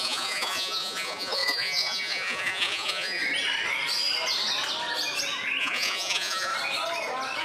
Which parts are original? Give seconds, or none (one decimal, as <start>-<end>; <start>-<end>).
3.2-5.6; 6.5-7.4